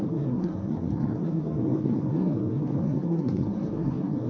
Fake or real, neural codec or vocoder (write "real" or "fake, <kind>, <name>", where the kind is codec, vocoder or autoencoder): fake, codec, SNAC